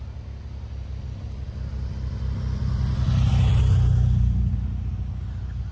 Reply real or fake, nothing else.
real